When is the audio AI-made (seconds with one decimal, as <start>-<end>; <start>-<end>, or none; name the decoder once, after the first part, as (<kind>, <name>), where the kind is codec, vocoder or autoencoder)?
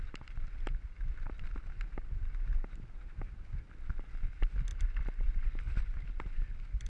none